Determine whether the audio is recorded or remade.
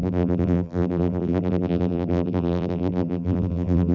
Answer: remade